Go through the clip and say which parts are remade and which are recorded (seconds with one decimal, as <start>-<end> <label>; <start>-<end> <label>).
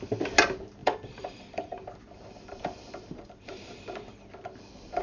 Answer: 0.0-0.8 recorded; 0.8-3.8 remade; 3.8-5.0 recorded